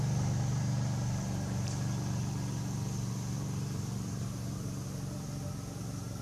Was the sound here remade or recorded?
recorded